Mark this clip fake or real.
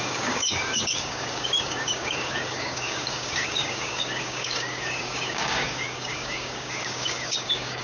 fake